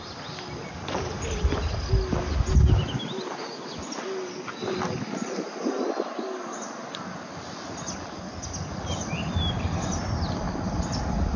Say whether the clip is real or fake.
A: real